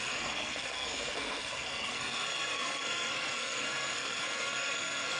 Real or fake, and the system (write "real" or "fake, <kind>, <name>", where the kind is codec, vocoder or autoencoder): fake, codec, SNAC